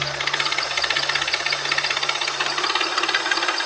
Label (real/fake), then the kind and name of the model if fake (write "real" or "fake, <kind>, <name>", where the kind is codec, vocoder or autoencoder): real